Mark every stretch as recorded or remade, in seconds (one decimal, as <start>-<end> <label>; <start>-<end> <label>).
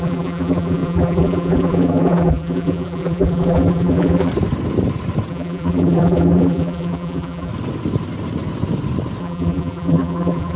0.0-4.3 remade; 4.3-5.3 recorded; 5.3-7.5 remade; 7.5-9.2 recorded; 9.2-10.6 remade